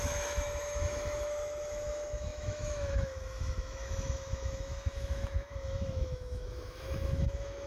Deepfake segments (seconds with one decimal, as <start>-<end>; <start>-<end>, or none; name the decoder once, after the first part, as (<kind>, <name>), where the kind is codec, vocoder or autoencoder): 0.0-7.7 (autoencoder, DAC-VAE)